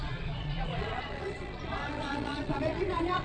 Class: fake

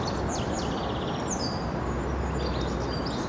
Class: real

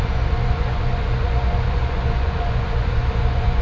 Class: fake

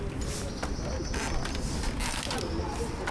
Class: real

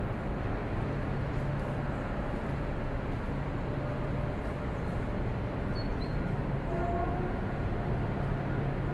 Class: real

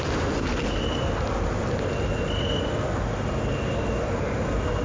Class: real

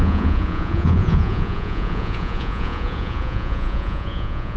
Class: fake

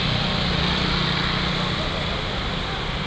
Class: real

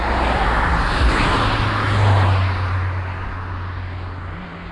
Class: real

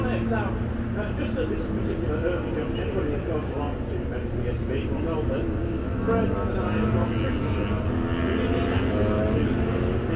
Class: real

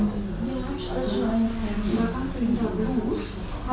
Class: real